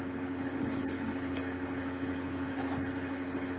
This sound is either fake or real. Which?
fake